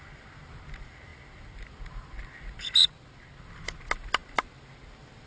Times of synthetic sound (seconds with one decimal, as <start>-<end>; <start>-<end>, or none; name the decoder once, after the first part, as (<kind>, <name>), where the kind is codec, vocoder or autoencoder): none